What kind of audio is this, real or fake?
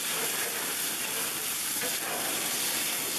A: real